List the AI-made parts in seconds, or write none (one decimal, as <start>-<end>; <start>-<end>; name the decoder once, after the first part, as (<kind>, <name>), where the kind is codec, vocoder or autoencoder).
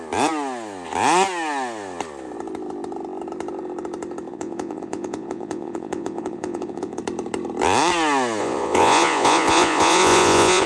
4.3-7.0 (vocoder, Vocos); 8.4-10.7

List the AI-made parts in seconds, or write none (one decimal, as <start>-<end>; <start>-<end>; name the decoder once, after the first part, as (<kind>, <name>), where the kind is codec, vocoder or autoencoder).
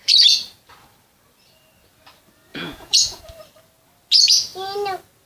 2.5-3.2 (vocoder, Vocos)